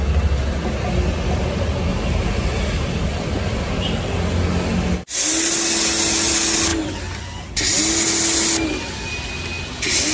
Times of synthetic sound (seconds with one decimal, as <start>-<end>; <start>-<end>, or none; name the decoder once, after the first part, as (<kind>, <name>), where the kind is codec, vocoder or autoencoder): 1.9-2.7 (vocoder, BigVGAN v2)